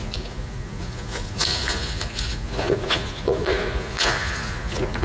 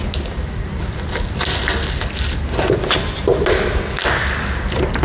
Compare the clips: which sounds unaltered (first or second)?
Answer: second